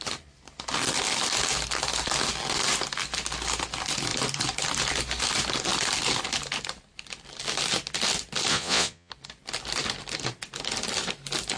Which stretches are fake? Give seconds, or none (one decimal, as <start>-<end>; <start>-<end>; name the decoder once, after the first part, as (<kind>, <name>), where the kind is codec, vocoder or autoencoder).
8.5-9.1 (vocoder, Vocos)